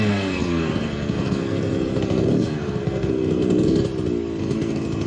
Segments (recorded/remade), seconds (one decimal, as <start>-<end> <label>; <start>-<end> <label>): 0.0-3.8 remade; 3.8-4.4 recorded; 4.4-5.1 remade